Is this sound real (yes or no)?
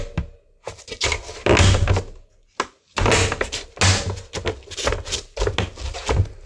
yes